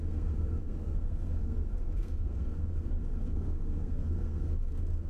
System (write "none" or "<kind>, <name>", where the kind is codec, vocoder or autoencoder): codec, SNAC